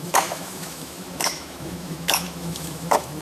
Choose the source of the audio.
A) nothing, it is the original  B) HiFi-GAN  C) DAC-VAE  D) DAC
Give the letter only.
C